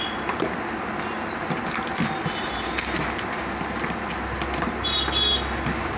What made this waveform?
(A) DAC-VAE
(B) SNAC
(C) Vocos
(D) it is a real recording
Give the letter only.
D